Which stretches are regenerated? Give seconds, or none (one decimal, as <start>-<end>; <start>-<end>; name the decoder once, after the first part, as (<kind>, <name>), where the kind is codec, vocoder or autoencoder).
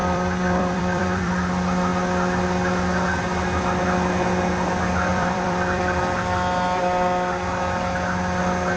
0.0-1.3 (vocoder, BigVGAN v2); 5.1-6.0